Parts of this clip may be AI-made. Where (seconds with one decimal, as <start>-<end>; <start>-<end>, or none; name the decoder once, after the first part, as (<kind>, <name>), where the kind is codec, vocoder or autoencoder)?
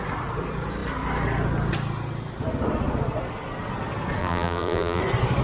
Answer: 4.2-5.0 (vocoder, BigVGAN v2)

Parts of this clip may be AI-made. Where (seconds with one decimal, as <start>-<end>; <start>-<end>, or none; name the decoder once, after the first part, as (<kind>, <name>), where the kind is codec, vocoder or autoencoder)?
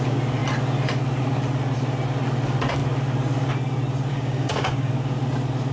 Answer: 4.1-4.9 (codec, DAC)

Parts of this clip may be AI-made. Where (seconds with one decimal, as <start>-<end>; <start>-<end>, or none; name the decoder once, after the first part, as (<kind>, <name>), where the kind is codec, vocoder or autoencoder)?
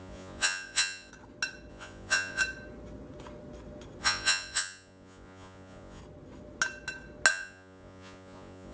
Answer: 0.0-1.1 (vocoder, Vocos); 1.7-2.4; 4.0-6.0; 7.3-8.7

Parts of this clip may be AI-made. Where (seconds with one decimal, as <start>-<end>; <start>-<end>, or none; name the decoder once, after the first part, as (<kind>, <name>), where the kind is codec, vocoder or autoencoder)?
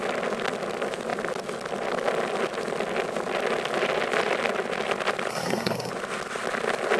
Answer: 5.3-5.9 (codec, SNAC)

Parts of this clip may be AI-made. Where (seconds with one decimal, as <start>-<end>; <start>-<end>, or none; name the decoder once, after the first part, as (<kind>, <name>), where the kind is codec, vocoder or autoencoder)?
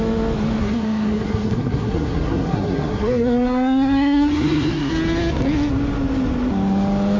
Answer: 0.6-4.9 (codec, SNAC)